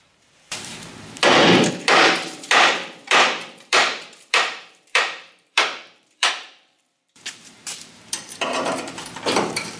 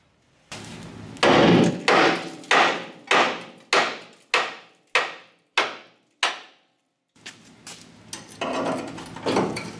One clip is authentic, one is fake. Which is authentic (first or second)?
second